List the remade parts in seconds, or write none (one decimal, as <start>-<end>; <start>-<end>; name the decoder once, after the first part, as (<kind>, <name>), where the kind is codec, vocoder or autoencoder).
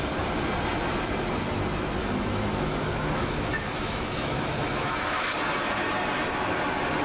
2.0-5.3 (autoencoder, DAC-VAE)